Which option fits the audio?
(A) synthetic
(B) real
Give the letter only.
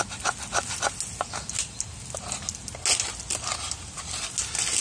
B